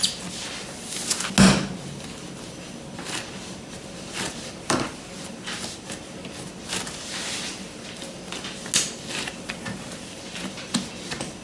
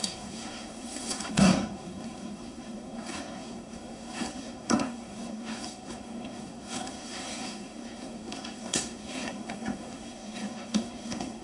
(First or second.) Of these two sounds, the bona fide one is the first